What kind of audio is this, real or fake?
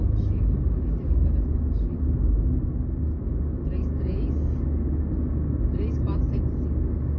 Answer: real